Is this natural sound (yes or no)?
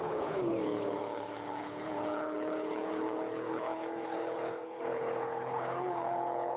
no